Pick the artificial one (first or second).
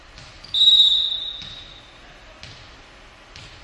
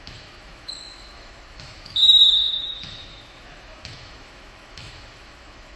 second